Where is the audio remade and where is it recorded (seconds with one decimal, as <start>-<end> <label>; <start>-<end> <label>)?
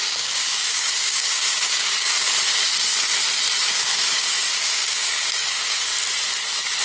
0.0-2.1 remade; 2.1-3.7 recorded; 3.7-5.9 remade; 5.9-6.8 recorded